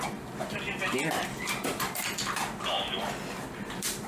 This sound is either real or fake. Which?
fake